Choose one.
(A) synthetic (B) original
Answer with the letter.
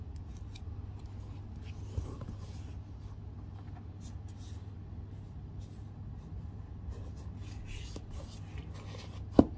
B